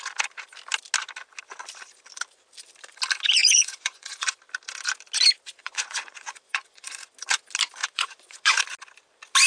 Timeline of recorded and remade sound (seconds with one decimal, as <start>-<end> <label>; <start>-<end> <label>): 0.0-3.4 recorded; 3.4-4.3 remade; 4.3-5.6 recorded; 5.6-7.1 remade; 7.1-7.8 recorded; 7.8-8.6 remade; 8.6-9.5 recorded